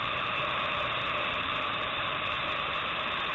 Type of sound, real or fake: fake